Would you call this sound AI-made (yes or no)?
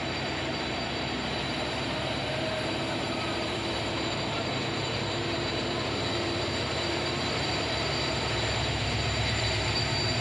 yes